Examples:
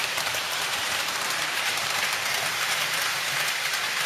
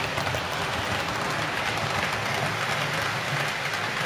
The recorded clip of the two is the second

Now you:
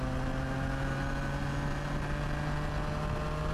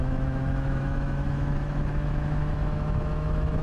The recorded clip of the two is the first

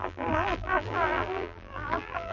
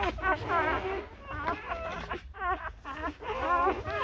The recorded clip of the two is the second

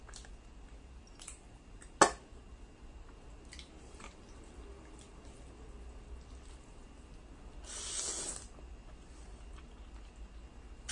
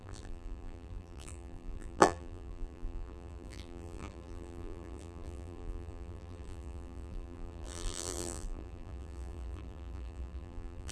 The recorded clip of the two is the first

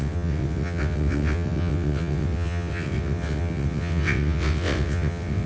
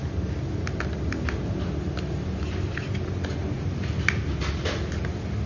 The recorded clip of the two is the second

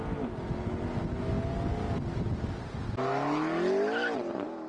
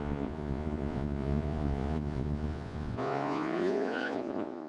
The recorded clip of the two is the first